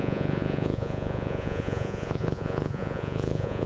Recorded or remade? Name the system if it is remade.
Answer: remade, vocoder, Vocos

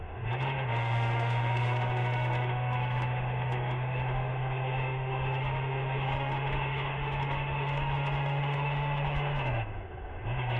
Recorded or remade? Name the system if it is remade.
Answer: remade, autoencoder, DAC-VAE